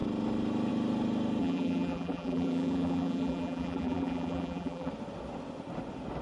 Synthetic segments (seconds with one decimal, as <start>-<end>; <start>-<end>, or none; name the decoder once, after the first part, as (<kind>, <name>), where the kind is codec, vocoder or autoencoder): 1.4-4.9 (vocoder, BigVGAN v2)